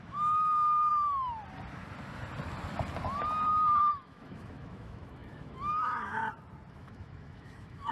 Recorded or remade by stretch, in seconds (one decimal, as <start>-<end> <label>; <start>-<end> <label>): 0.0-0.9 remade; 0.9-3.8 recorded; 3.8-6.2 remade; 6.2-6.7 recorded; 6.7-7.9 remade